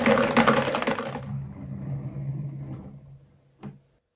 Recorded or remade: recorded